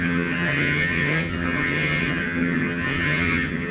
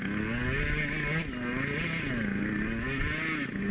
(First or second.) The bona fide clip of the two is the second